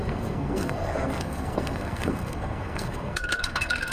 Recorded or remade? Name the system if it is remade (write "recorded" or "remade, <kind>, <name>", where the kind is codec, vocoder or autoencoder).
remade, codec, SNAC